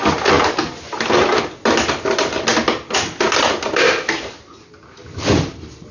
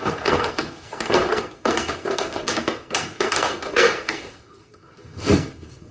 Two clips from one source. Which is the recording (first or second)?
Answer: first